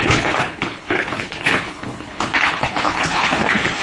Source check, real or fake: fake